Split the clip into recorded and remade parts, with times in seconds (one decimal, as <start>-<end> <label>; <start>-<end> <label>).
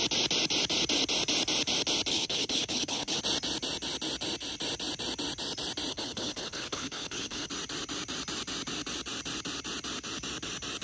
0.0-2.1 recorded; 2.1-3.2 remade; 3.2-5.9 recorded; 5.9-7.5 remade; 7.5-10.8 recorded